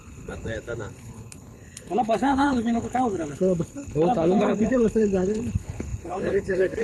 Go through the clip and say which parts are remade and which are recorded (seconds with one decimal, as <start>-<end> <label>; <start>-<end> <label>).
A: 0.0-6.8 remade